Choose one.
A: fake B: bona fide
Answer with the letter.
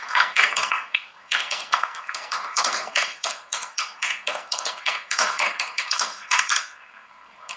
A